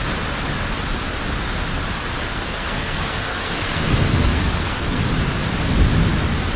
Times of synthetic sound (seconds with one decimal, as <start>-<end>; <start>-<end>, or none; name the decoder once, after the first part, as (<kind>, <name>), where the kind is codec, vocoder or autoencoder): 2.3-5.0 (codec, SNAC)